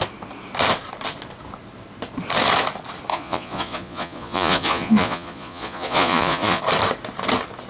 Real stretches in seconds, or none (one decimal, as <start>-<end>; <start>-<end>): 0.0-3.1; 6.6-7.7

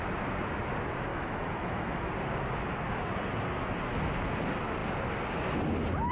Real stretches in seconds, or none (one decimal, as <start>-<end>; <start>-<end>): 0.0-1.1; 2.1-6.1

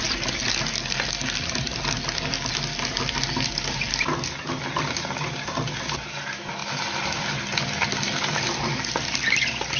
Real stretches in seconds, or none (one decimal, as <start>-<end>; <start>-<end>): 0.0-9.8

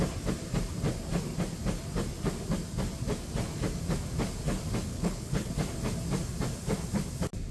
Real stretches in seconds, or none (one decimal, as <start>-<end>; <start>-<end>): 0.0-4.9; 5.5-7.5

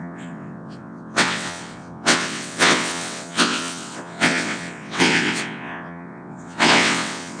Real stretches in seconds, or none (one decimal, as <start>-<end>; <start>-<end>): none

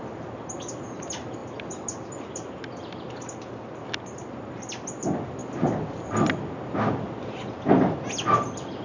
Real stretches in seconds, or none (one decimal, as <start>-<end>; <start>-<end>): 0.0-8.8

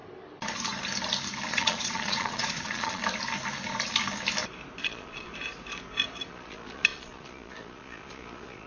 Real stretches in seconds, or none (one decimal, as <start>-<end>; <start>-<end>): 0.0-1.5; 3.0-4.8; 5.3-6.3